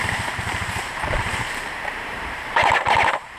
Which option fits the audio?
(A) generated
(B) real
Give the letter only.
A